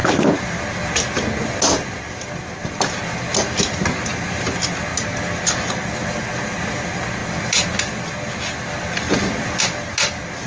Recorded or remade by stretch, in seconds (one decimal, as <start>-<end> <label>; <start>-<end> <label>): 0.0-10.5 recorded